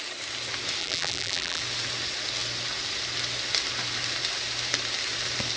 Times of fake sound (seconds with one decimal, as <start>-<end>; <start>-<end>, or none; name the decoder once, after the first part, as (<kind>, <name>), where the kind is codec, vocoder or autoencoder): 0.8-1.6 (vocoder, BigVGAN v2)